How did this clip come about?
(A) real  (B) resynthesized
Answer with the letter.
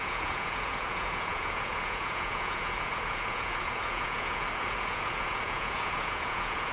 B